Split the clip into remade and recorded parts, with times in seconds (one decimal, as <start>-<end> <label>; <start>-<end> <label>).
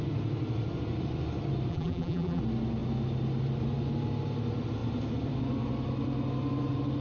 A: 0.0-1.7 recorded; 1.7-2.4 remade; 2.4-7.0 recorded